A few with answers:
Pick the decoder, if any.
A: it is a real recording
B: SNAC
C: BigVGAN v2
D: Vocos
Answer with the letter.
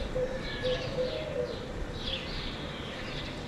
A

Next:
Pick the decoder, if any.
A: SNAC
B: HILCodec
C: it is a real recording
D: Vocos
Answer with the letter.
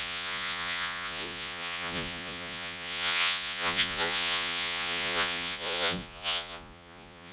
D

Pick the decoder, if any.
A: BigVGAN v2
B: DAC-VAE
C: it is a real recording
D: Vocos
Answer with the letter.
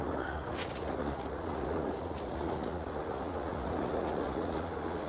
D